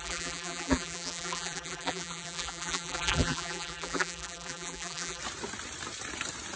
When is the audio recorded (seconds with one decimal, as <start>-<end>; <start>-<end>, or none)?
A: 5.2-6.6